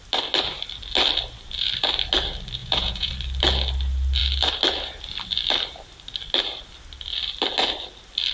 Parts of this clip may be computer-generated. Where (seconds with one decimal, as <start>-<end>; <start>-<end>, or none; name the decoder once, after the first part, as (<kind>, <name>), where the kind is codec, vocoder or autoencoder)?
2.6-3.1 (vocoder, Vocos)